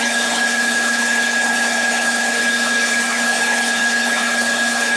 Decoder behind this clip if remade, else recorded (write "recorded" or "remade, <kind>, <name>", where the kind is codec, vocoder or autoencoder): remade, codec, HILCodec